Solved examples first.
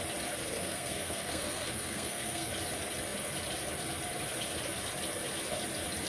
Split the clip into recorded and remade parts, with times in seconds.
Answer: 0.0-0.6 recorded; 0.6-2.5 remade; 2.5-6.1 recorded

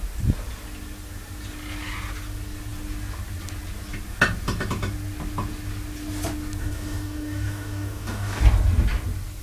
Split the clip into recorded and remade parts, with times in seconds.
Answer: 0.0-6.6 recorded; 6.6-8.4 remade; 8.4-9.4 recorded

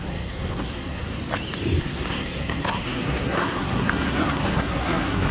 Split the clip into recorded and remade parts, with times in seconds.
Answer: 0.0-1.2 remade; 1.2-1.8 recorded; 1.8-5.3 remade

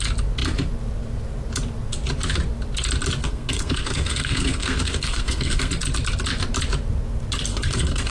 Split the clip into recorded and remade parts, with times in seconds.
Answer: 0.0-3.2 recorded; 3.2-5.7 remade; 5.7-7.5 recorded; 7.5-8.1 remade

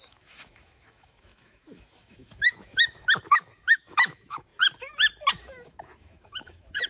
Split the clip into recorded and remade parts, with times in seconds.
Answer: 0.0-4.5 remade; 4.5-5.3 recorded; 5.3-6.9 remade